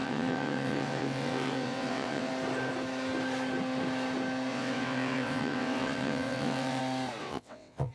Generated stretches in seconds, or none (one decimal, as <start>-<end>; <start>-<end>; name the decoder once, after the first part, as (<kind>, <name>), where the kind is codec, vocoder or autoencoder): 0.0-2.3 (vocoder, WaveNeXt); 4.5-6.8; 7.2-7.9